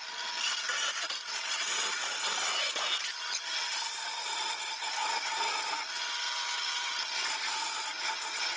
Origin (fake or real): real